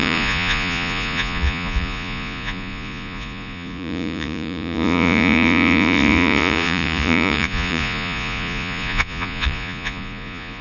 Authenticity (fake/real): fake